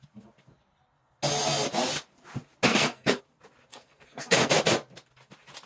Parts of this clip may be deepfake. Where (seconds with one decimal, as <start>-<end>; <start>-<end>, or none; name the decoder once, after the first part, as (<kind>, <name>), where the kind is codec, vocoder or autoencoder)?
2.7-3.2 (codec, SNAC); 3.7-4.6